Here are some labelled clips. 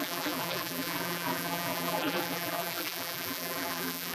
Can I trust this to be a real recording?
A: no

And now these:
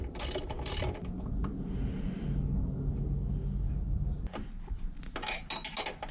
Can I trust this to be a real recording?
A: yes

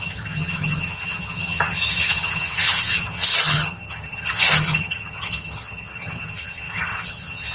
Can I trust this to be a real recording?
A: no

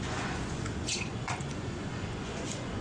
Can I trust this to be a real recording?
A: no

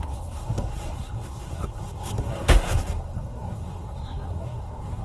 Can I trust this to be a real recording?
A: no